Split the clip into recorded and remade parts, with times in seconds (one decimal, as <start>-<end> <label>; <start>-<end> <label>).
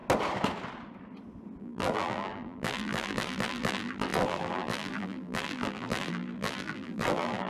0.0-1.6 recorded; 1.6-7.5 remade